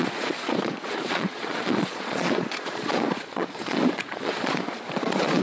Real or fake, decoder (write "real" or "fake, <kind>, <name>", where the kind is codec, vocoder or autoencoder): fake, vocoder, Vocos